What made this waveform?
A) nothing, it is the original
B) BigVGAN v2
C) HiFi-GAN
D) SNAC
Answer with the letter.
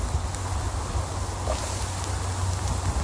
A